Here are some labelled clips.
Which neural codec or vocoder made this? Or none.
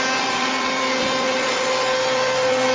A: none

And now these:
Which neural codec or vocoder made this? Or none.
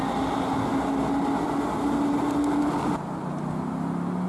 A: none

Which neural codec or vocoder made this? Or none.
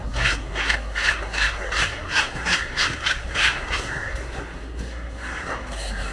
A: codec, SNAC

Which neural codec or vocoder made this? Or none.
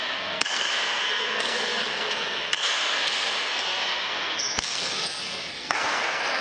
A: codec, SNAC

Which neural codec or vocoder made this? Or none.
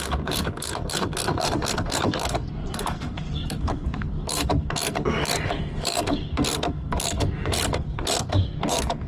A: codec, SNAC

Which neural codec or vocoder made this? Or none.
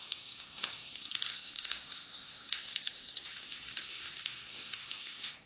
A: codec, SNAC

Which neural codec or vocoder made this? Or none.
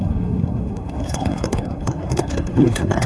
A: codec, SNAC